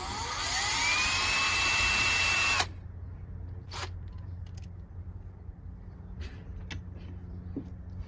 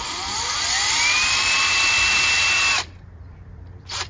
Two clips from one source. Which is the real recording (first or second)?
first